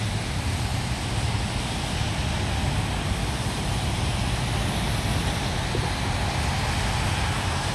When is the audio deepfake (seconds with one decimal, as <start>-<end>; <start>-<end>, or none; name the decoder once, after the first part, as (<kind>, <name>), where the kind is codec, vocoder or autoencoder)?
none

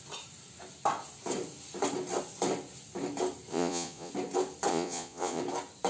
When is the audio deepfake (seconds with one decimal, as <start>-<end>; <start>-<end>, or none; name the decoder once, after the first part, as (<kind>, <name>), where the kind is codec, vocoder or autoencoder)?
3.5-4.1 (vocoder, Vocos); 4.7-5.4

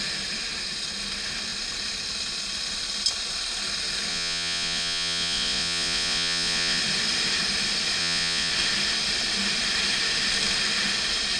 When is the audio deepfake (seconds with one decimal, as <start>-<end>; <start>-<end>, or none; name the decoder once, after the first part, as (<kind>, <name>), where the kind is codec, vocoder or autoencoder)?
4.1-6.8 (vocoder, Vocos); 8.0-8.5

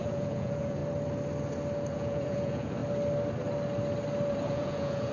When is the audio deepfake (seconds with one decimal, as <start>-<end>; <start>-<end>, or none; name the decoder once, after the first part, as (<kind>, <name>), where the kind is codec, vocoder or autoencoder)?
0.0-0.8 (vocoder, Vocos); 1.9-2.8; 4.3-5.1

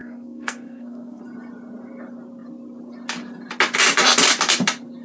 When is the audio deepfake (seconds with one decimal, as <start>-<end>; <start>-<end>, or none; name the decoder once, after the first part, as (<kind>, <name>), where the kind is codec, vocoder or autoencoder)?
0.0-1.2 (codec, SNAC)

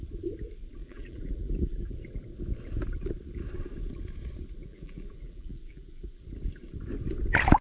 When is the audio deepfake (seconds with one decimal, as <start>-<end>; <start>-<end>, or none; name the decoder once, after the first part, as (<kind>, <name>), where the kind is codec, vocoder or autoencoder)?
0.8-2.0 (vocoder, BigVGAN v2); 4.6-6.2

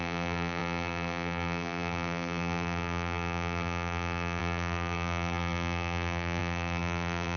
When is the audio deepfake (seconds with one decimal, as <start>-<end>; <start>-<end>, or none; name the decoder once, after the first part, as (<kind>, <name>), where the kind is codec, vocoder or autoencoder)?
0.0-7.4 (vocoder, BigVGAN v2)

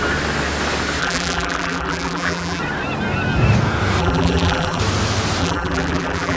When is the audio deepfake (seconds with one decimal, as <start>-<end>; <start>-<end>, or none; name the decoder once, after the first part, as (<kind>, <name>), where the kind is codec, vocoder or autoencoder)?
1.0-2.6 (vocoder, BigVGAN v2); 4.0-4.8; 5.4-6.4